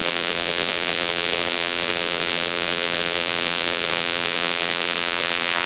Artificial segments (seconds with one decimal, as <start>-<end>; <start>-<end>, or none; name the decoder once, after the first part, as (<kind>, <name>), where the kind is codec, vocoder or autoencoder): 0.0-5.7 (vocoder, BigVGAN v2)